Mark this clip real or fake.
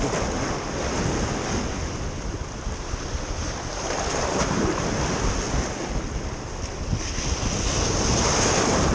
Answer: real